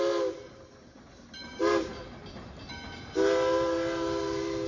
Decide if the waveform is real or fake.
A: real